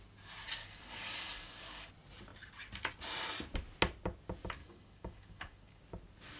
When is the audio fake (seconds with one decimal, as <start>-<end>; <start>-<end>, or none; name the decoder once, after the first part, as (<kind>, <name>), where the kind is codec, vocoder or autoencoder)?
0.6-1.9 (codec, DAC); 4.6-5.8